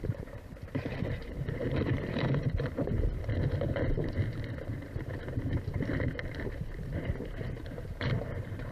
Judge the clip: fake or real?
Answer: fake